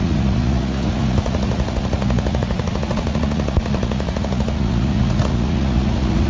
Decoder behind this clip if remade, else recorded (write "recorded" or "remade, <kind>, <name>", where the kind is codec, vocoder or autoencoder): remade, vocoder, Vocos